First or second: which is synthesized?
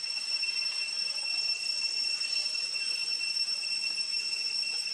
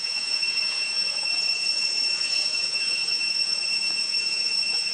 second